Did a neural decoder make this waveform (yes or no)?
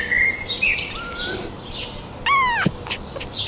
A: no